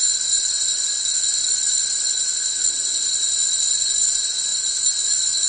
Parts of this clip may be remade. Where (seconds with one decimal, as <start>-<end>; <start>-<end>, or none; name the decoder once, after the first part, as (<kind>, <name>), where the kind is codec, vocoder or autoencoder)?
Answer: 1.4-2.3 (vocoder, Vocos)